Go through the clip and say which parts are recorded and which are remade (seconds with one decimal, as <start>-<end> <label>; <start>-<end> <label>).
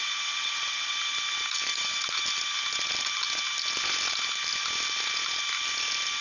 0.0-0.9 remade; 0.9-6.2 recorded